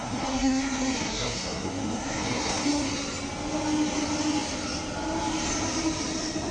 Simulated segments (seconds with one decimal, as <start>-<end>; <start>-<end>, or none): 0.0-2.9